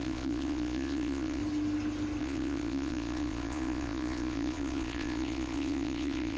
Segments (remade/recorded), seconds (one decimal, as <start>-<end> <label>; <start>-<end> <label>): 0.0-1.4 remade; 1.4-2.2 recorded; 2.2-6.4 remade